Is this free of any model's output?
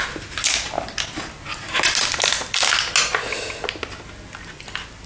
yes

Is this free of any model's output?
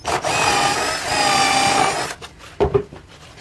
yes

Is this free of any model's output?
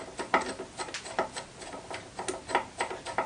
yes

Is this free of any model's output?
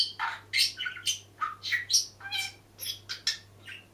yes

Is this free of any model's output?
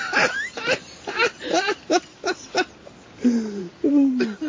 no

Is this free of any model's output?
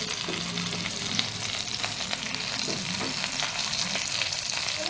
yes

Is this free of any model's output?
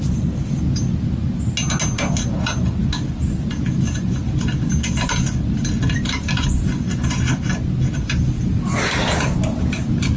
yes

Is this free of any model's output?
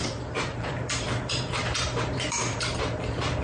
no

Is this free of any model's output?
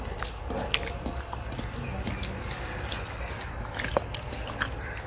yes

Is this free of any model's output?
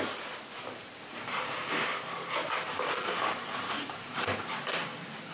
no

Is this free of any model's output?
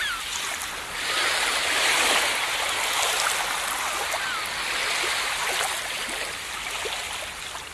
yes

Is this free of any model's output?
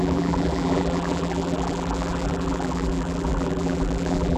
no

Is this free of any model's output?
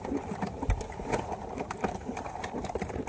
no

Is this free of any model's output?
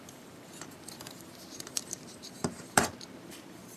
no